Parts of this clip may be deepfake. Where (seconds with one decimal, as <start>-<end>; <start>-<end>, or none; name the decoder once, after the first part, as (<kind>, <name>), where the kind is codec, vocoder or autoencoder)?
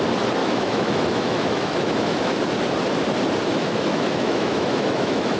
0.4-2.4 (autoencoder, DAC-VAE); 3.5-5.4